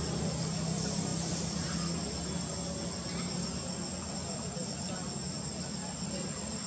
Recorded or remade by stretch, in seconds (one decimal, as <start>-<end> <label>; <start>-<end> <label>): 0.0-6.7 recorded